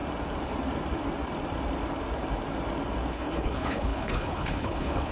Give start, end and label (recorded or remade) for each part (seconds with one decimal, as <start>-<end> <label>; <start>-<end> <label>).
0.0-3.1 recorded; 3.1-5.1 remade